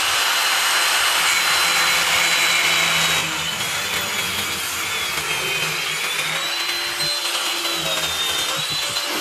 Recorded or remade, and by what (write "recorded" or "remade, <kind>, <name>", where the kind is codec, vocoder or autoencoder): recorded